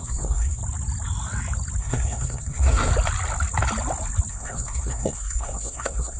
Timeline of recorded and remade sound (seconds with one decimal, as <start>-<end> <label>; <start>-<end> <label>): 0.0-0.6 remade; 0.6-1.8 recorded; 1.8-2.9 remade; 2.9-4.3 recorded; 4.3-6.2 remade